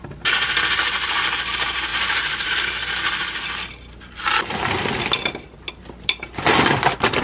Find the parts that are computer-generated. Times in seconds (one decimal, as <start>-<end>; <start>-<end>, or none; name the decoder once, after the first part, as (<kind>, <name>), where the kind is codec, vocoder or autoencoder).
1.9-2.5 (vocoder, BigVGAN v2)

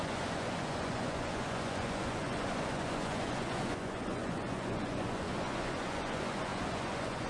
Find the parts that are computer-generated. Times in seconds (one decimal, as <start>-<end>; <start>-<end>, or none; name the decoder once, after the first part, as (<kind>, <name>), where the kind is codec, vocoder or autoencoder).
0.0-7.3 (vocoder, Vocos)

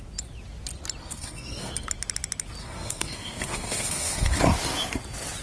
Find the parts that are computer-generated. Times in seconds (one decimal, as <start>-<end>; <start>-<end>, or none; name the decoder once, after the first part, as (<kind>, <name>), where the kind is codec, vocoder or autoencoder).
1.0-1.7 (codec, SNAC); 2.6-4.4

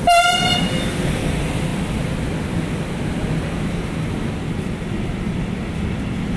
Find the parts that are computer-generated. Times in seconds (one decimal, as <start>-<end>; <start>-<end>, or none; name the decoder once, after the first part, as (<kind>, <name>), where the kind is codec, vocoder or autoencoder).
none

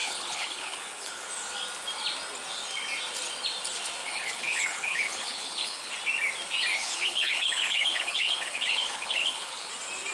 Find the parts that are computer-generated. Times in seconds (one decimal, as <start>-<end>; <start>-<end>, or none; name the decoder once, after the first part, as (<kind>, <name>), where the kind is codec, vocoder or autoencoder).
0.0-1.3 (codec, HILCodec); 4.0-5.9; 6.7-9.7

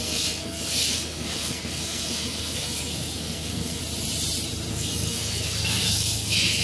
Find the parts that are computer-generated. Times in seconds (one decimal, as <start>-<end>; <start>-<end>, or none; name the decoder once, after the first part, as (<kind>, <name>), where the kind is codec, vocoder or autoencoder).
0.0-3.8 (codec, SNAC); 4.7-6.6